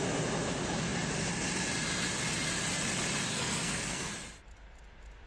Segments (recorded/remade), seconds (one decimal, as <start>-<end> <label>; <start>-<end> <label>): 0.0-3.3 recorded; 3.3-4.1 remade; 4.1-5.3 recorded